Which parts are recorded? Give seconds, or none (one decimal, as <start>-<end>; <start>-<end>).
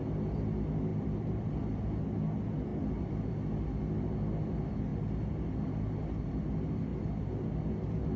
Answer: 0.0-0.9; 1.5-2.7; 3.3-6.9; 7.6-8.2